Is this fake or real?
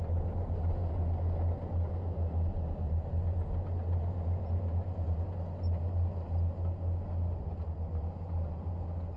real